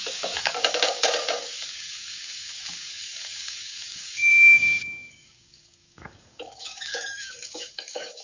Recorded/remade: remade